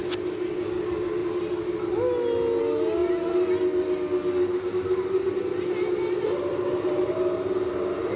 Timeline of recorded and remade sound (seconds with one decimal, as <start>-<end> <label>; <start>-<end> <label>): 0.0-8.2 recorded